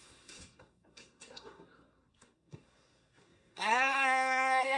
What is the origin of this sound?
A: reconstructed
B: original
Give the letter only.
A